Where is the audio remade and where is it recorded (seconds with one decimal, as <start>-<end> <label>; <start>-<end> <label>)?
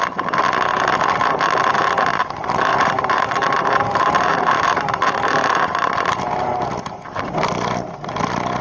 0.0-2.7 recorded; 2.7-6.5 remade; 6.5-8.6 recorded